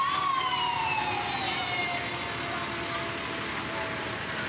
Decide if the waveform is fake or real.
real